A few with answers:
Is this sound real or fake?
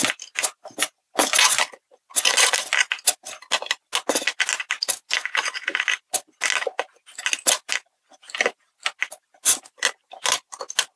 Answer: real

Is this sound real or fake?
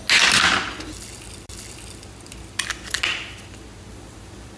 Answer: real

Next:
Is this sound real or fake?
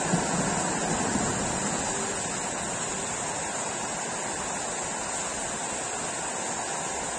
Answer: real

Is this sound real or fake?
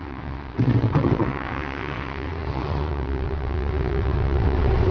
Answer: fake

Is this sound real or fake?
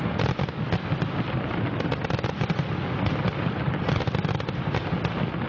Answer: real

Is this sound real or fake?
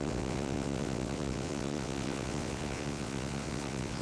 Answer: fake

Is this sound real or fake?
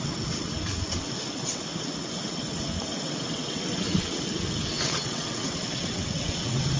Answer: fake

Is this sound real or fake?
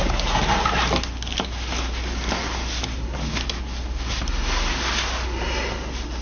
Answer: real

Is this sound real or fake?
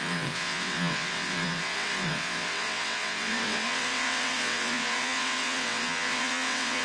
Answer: fake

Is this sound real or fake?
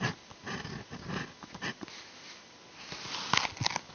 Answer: real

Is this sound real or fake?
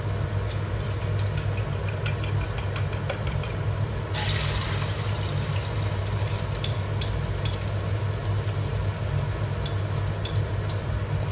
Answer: real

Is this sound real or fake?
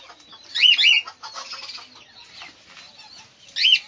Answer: real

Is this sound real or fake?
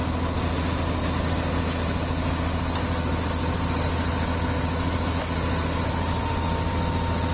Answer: real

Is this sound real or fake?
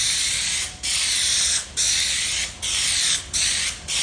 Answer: real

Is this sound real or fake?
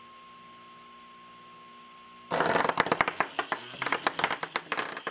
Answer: real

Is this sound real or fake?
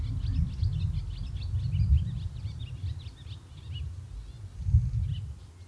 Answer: real